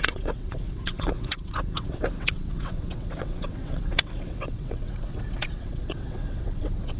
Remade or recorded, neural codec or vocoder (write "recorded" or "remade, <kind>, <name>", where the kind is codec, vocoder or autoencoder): remade, vocoder, WaveNeXt